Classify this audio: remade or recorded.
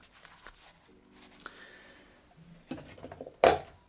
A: recorded